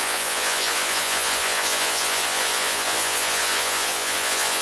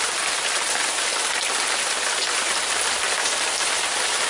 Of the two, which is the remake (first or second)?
first